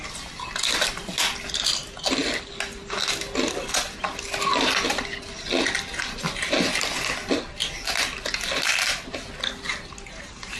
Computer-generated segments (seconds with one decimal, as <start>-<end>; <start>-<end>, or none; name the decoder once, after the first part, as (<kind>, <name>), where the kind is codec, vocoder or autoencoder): none